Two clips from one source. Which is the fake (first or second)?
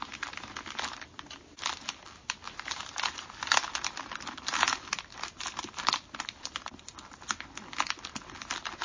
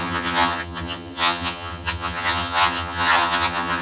second